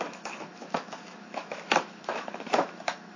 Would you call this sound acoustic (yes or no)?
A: no